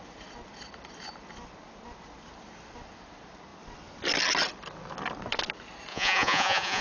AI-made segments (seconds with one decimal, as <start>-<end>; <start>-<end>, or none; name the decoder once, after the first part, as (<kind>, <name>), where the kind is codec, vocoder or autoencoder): 5.9-6.8 (vocoder, Vocos)